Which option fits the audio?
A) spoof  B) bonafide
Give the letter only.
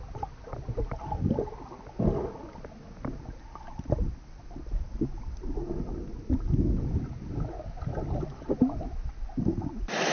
B